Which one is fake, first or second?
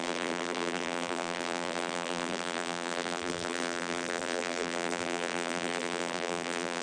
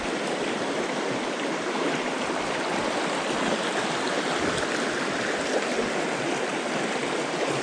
first